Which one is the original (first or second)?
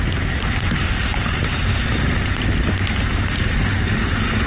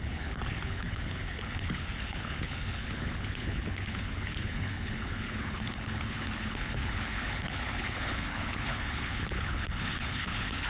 first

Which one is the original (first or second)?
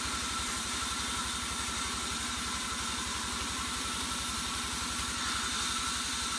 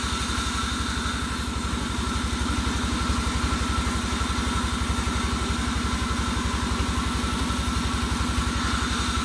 second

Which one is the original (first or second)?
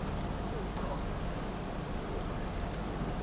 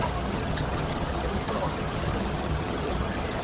first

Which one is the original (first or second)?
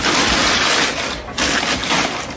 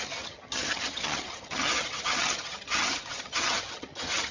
first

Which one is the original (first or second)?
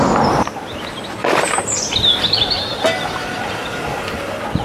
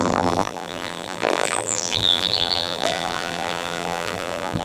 first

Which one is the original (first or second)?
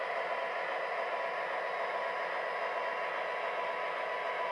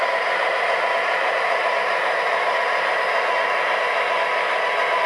first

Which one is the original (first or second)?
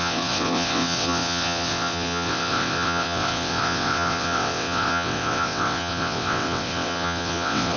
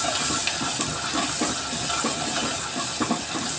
second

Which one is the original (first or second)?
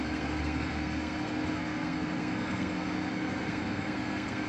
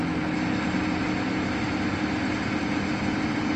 second